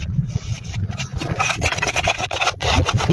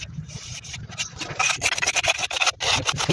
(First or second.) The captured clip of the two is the second